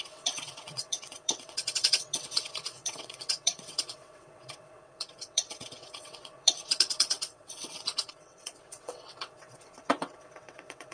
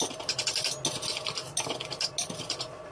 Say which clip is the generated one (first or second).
first